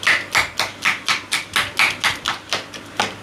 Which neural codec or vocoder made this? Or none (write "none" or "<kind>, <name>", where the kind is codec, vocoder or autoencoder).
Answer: none